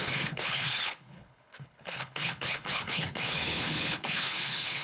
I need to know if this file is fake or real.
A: fake